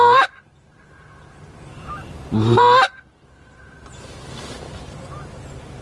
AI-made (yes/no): yes